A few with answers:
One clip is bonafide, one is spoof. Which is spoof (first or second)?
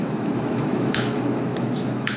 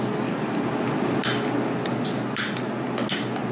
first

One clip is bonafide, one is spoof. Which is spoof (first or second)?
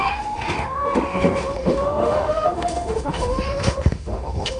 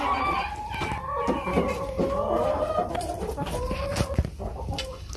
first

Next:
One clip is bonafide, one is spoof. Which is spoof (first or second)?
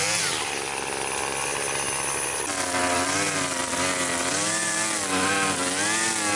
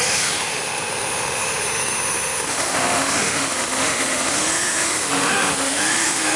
second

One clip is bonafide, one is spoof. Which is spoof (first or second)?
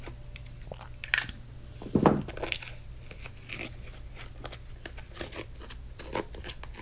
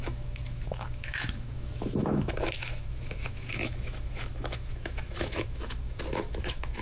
second